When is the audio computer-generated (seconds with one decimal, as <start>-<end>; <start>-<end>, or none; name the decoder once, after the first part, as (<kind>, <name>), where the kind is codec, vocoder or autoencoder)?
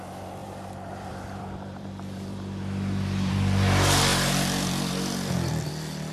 0.4-3.3 (vocoder, BigVGAN v2); 4.1-4.9